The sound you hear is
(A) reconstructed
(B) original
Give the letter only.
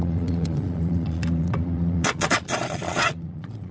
A